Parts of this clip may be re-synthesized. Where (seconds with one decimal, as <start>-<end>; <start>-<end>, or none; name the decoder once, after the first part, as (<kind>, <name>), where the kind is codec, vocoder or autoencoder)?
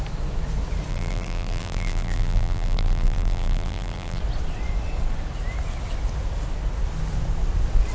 0.9-4.2 (vocoder, BigVGAN v2)